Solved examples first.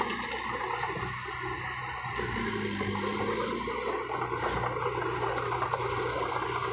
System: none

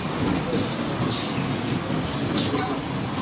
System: none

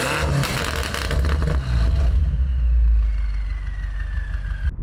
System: none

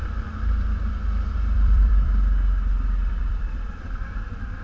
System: vocoder, BigVGAN v2